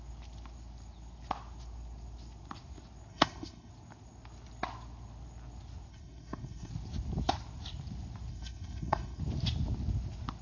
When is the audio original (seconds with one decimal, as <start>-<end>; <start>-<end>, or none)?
0.0-3.1; 3.7-5.9; 6.7-8.3; 9.2-10.4